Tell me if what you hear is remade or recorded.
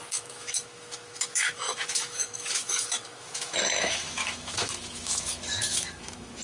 remade